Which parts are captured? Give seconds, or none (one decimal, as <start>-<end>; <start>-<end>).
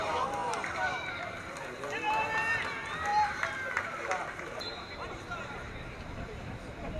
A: 0.0-3.1; 6.2-7.0